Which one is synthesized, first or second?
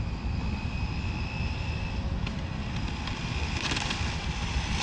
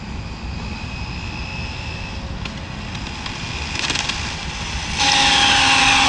first